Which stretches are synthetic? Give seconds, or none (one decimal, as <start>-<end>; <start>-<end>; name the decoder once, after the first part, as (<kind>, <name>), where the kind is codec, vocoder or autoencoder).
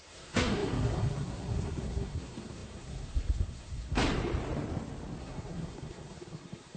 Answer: 0.0-4.0 (codec, SNAC); 5.2-6.8